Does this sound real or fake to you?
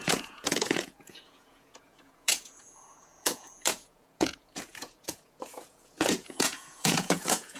fake